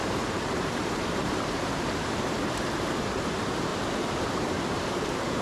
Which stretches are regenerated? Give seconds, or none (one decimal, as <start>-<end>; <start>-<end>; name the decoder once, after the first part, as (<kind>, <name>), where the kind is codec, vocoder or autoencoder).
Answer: 0.0-3.7 (vocoder, BigVGAN v2); 4.4-5.4